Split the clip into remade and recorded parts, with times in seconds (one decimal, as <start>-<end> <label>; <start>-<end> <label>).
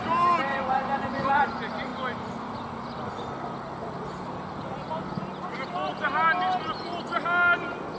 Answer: 0.0-0.5 recorded; 0.5-1.4 remade; 1.4-8.0 recorded